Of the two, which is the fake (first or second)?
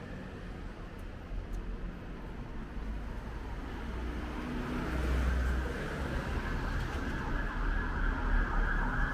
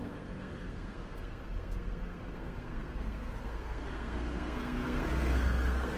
second